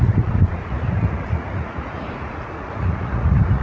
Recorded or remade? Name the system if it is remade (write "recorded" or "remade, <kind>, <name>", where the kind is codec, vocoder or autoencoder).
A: remade, vocoder, Vocos